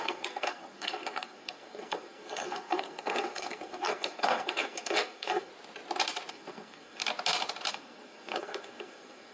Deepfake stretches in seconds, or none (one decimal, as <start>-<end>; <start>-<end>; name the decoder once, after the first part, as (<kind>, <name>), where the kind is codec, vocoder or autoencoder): 0.0-5.5 (codec, SNAC); 6.3-7.0; 7.7-9.3

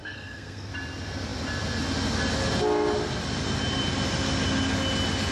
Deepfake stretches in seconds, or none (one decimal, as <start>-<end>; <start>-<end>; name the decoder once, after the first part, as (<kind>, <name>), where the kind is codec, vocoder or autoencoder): 0.0-0.7 (codec, SNAC)

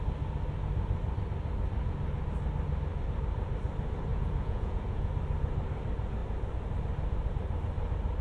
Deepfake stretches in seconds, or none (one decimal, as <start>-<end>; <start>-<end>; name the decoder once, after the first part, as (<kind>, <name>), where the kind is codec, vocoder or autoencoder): 4.1-5.1 (vocoder, Vocos)

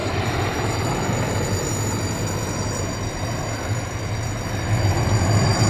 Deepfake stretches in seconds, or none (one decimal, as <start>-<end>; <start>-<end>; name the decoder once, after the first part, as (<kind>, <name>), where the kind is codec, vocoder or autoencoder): 0.0-0.7 (vocoder, BigVGAN v2)